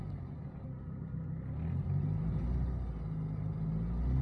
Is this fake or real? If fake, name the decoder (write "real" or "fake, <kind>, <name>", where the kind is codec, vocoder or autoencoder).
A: real